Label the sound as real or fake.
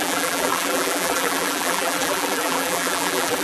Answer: fake